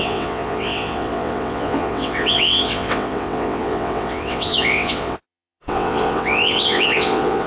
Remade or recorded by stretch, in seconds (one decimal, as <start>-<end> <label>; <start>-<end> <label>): 0.0-7.5 remade